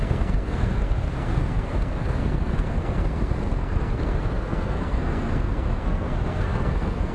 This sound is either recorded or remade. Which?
remade